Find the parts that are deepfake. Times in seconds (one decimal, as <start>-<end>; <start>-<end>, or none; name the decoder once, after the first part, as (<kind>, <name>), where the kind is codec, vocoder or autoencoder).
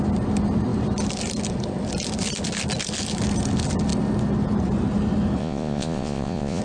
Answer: 5.4-6.6 (vocoder, Vocos)